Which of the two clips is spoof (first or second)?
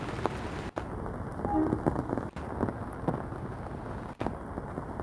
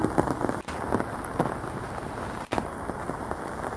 second